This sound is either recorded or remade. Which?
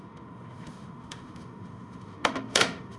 remade